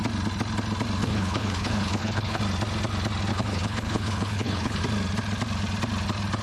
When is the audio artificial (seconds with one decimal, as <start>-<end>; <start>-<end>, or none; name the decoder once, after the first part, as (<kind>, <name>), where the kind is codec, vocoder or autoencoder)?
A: 1.0-2.4 (codec, HILCodec); 3.3-4.8